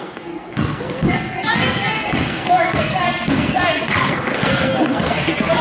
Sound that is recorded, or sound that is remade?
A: remade